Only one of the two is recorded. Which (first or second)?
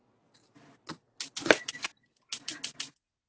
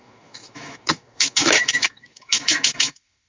first